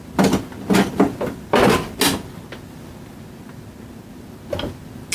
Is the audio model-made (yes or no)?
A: no